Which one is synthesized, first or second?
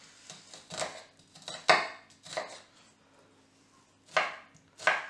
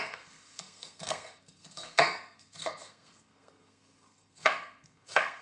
second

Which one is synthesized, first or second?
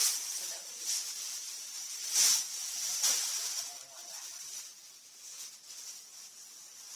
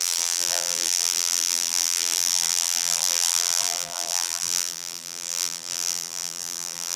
second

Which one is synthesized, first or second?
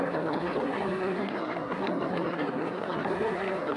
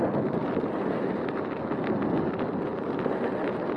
first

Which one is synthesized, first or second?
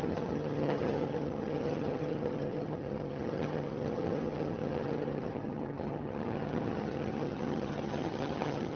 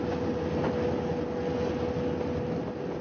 first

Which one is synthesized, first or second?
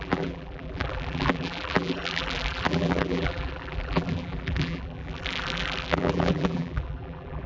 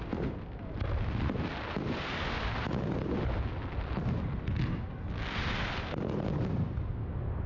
first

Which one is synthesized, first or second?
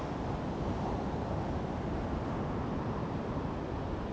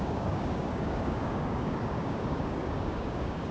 second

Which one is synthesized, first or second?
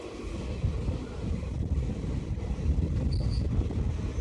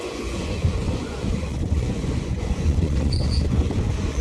second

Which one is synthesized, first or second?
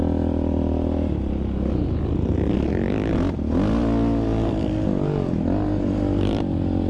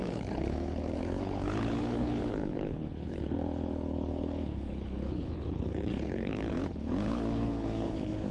second